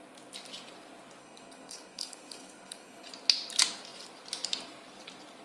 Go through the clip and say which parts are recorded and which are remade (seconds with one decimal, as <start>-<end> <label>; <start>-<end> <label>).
0.0-1.2 recorded; 1.2-3.1 remade; 3.1-5.4 recorded